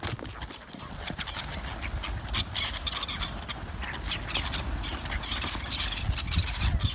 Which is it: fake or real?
real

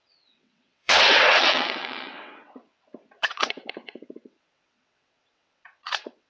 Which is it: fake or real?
fake